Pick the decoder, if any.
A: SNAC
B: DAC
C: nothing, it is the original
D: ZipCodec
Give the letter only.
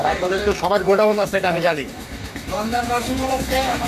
B